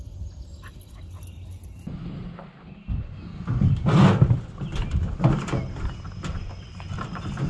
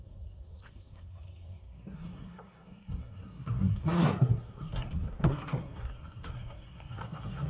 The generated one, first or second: second